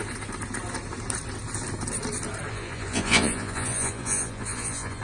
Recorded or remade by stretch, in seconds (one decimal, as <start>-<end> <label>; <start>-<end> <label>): 0.0-2.5 recorded; 2.5-5.0 remade